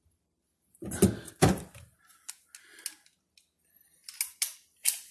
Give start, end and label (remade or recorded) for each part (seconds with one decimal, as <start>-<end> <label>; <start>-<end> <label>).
0.0-5.1 recorded